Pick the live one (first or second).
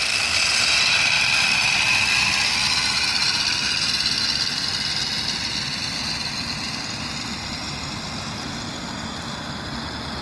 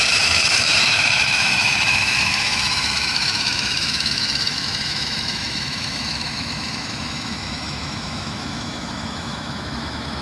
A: first